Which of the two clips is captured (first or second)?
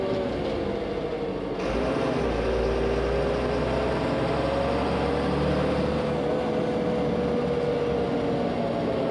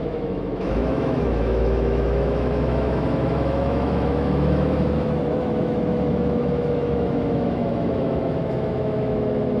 first